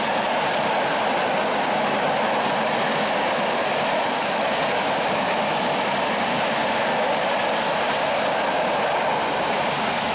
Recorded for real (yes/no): yes